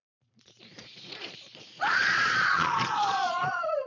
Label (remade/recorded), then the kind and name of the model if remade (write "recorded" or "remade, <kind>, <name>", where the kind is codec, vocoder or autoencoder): remade, vocoder, Vocos